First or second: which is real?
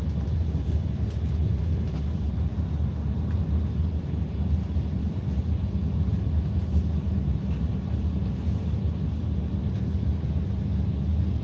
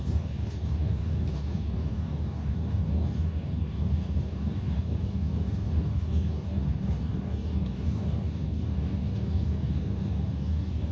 first